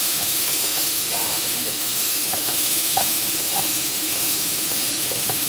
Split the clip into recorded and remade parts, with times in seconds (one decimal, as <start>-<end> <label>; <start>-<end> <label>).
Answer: 0.0-5.5 remade